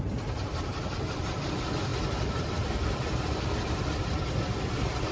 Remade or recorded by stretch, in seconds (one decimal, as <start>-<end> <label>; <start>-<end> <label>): 0.0-5.1 remade